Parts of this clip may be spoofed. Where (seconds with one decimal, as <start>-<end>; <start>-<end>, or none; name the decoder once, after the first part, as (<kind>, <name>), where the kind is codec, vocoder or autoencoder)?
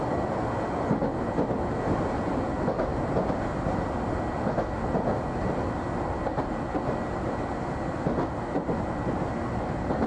none